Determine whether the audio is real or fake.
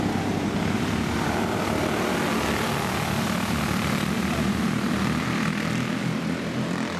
fake